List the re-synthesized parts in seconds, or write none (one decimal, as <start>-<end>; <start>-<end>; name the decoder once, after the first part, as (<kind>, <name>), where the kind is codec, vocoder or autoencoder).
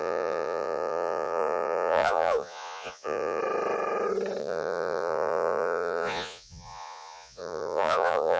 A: 0.0-3.4 (vocoder, Vocos); 4.4-8.4